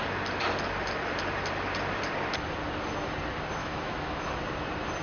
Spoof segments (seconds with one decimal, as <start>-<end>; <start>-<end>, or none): 3.6-4.2

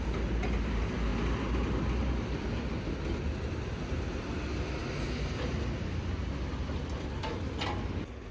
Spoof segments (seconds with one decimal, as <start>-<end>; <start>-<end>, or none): none

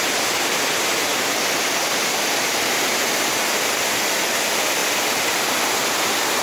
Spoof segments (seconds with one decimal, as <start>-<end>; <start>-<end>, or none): none